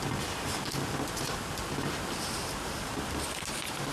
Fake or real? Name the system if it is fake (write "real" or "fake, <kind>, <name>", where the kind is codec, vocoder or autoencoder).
real